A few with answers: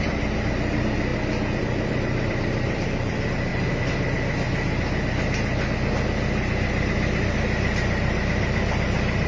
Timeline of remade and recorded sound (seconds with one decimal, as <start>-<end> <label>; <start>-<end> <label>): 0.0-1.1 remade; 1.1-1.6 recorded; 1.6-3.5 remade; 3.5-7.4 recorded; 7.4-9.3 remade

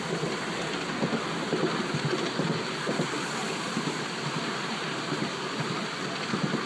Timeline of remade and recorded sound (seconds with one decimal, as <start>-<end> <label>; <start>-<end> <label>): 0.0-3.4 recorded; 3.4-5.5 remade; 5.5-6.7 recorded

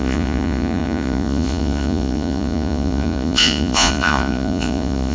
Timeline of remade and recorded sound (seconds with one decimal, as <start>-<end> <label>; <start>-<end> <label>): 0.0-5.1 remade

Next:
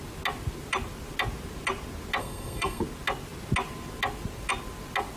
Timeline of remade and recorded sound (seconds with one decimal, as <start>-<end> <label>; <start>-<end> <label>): 0.0-2.2 recorded; 2.2-2.8 remade; 2.8-5.2 recorded